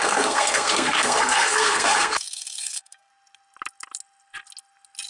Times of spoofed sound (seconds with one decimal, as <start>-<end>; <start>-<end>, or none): 0.0-3.1